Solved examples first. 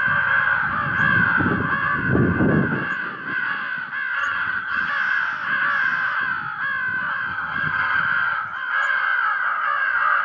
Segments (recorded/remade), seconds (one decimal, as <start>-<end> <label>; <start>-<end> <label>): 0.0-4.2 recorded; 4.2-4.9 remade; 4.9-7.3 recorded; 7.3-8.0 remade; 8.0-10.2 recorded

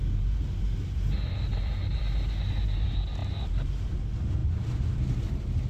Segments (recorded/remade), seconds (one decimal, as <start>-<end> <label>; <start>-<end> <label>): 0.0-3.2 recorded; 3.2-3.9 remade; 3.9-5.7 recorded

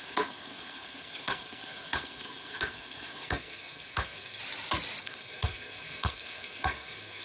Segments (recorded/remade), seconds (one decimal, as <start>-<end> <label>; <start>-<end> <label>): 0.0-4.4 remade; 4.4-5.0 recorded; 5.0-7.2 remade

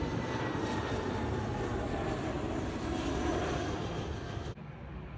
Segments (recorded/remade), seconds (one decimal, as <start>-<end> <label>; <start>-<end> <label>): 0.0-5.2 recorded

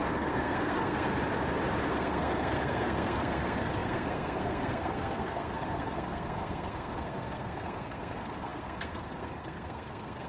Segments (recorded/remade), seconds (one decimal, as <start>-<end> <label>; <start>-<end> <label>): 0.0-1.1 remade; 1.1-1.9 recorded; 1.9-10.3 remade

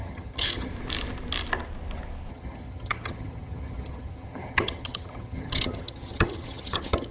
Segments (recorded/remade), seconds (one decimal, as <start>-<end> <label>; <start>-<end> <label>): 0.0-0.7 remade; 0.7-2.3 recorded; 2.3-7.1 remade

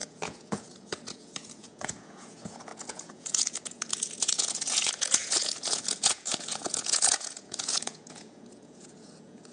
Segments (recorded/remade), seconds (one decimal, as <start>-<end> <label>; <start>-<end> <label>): 0.0-9.5 remade

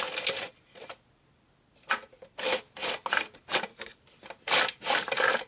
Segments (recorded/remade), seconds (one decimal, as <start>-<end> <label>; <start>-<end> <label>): 0.0-5.5 recorded